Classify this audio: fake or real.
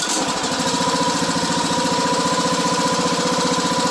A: real